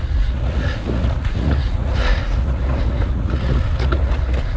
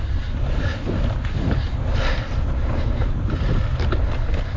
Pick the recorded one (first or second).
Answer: second